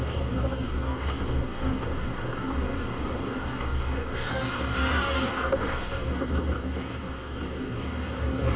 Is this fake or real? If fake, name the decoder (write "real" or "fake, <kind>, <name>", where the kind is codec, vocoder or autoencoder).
fake, codec, DAC